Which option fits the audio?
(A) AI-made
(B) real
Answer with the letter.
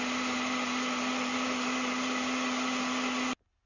B